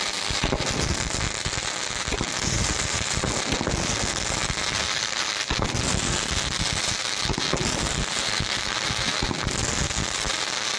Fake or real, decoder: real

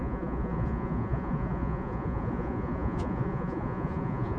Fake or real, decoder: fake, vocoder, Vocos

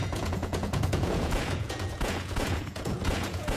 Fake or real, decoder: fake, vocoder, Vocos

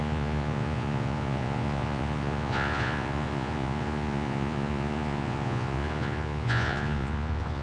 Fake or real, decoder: fake, vocoder, Vocos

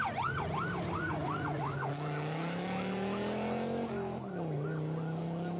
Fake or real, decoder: real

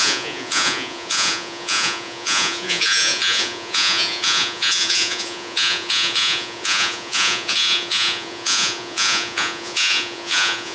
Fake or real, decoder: fake, vocoder, Vocos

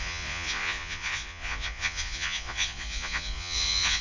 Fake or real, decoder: fake, vocoder, Vocos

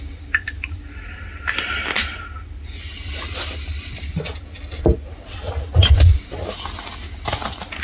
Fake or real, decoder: real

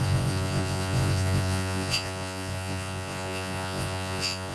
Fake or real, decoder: fake, vocoder, Vocos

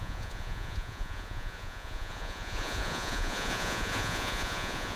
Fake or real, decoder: fake, vocoder, Vocos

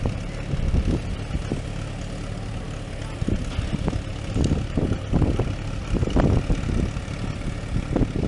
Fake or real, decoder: real